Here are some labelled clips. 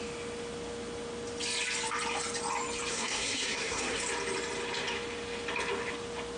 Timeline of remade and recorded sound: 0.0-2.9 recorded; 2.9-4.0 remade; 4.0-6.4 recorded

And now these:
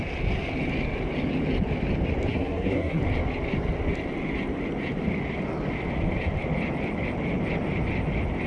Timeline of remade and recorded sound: 0.0-2.3 recorded; 2.3-3.0 remade; 3.0-8.5 recorded

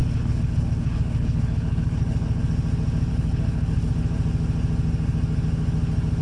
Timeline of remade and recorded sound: 0.0-2.4 remade; 2.4-3.1 recorded; 3.1-3.9 remade; 3.9-6.2 recorded

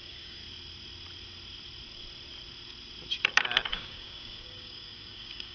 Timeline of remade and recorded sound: 0.0-0.4 remade; 0.4-3.7 recorded; 3.7-5.5 remade

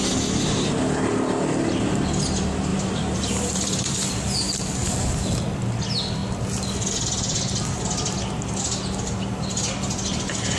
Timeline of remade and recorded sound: 0.0-2.7 recorded; 2.7-3.9 remade; 3.9-10.6 recorded

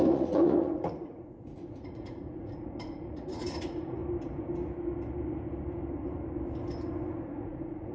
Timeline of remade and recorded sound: 0.0-4.0 remade; 4.0-7.2 recorded; 7.2-7.9 remade